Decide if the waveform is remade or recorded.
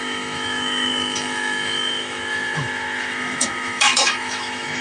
remade